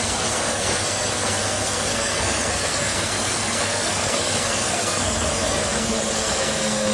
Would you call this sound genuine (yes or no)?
no